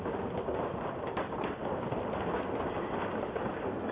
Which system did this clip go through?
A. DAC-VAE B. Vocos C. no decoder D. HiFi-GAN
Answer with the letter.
C